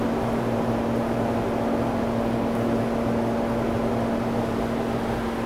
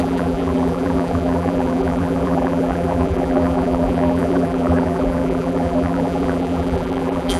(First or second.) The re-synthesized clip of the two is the second